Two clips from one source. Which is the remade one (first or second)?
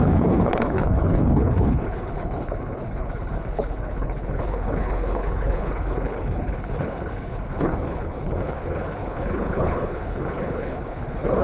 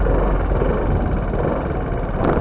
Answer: first